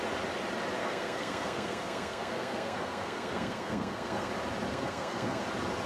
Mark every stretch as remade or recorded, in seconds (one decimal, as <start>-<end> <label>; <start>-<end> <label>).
0.0-0.8 recorded; 0.8-4.3 remade; 4.3-4.7 recorded; 4.7-5.4 remade; 5.4-5.9 recorded